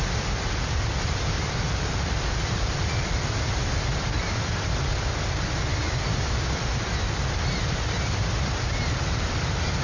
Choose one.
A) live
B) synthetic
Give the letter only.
A